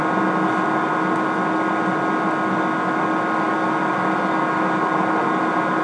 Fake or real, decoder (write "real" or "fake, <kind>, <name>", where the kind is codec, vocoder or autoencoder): real